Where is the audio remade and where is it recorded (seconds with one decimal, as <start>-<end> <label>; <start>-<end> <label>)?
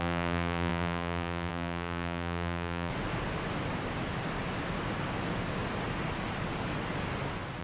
0.0-2.9 remade; 2.9-7.6 recorded